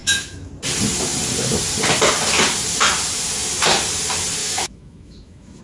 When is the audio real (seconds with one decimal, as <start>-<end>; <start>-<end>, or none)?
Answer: 0.5-4.4